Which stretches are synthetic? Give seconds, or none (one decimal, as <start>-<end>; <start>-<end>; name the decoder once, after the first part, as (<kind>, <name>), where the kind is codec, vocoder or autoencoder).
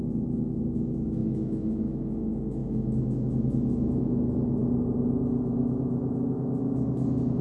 0.0-4.6 (autoencoder, DAC-VAE); 5.4-7.4